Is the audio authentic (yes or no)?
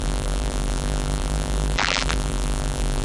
no